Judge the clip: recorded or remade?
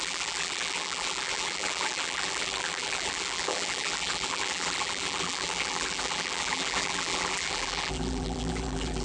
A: remade